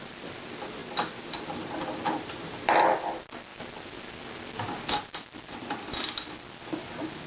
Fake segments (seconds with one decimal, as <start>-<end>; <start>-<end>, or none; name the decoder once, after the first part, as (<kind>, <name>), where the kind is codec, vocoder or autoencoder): 0.8-2.5 (vocoder, BigVGAN v2)